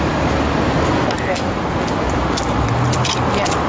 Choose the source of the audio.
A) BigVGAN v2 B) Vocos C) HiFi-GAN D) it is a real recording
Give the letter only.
D